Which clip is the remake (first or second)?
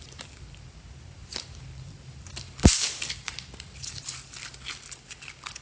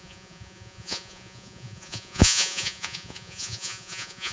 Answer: second